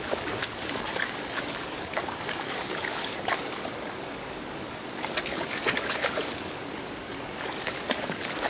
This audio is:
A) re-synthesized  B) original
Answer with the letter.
A